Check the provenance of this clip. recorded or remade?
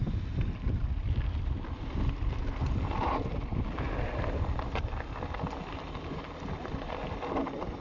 recorded